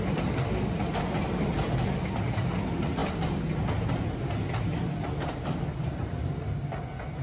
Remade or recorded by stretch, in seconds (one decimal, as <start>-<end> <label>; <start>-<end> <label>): 0.0-7.2 recorded